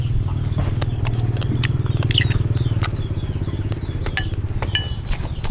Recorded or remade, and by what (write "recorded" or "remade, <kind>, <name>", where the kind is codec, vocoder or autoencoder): recorded